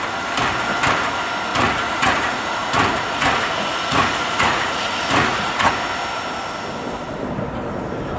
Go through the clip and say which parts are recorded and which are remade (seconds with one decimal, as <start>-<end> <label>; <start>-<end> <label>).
0.0-1.5 recorded; 1.5-5.7 remade; 5.7-8.2 recorded